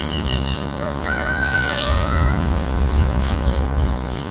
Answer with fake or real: fake